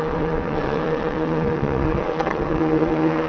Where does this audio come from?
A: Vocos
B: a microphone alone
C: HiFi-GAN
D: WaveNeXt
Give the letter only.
D